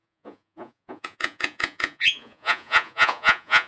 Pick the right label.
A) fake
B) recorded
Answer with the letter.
A